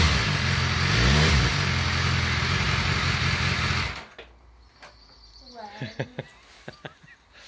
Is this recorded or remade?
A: recorded